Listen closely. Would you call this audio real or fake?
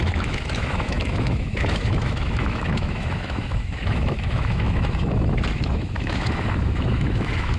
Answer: fake